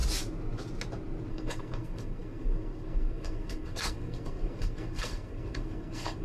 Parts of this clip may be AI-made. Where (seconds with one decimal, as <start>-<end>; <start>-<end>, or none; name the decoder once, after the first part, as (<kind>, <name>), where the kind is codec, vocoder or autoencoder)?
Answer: 1.3-6.2 (codec, SNAC)